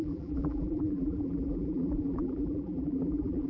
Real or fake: fake